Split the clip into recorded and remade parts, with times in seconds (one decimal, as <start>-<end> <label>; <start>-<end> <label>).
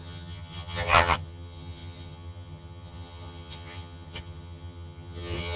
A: 0.0-5.6 remade